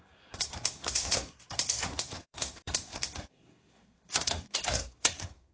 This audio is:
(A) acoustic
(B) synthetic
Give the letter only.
B